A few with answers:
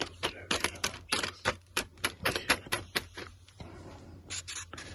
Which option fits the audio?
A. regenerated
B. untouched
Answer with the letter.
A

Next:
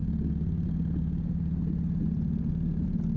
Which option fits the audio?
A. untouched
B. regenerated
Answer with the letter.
A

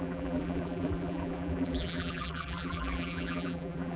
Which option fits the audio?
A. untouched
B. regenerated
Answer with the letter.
B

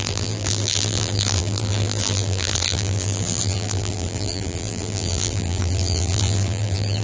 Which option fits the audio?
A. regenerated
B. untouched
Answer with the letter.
A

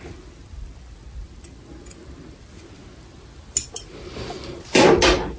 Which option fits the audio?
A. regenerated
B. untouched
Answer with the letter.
B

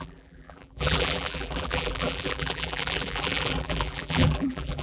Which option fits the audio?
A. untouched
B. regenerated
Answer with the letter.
B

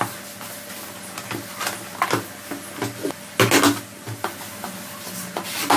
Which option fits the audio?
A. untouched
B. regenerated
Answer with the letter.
A